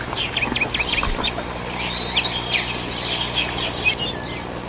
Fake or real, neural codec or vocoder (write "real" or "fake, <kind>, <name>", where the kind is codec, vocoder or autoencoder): real